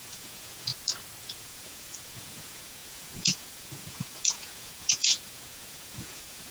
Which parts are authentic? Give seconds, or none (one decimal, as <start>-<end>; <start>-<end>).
0.7-1.2